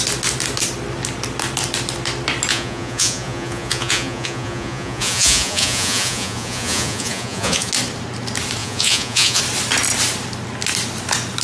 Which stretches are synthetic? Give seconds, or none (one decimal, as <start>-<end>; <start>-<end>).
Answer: 2.5-7.7; 8.6-9.4